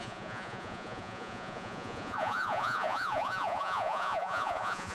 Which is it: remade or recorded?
remade